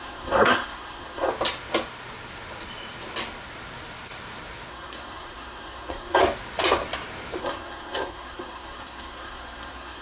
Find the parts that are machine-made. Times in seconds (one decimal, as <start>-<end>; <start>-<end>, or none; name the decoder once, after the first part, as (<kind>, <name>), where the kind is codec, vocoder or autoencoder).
0.0-1.3 (codec, SNAC); 4.7-6.2; 7.4-10.0